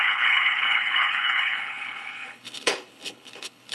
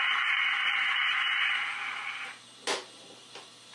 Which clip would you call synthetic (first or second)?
first